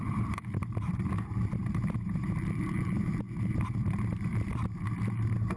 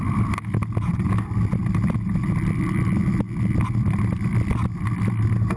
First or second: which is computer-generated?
first